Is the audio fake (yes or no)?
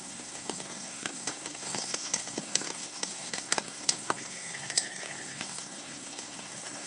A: yes